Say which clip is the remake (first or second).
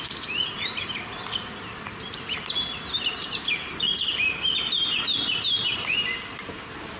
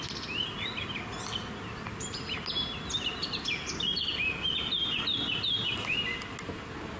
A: first